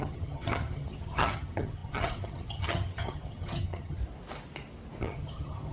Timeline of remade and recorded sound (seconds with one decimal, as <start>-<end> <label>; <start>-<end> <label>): 0.0-4.0 remade; 4.0-5.0 recorded; 5.0-5.7 remade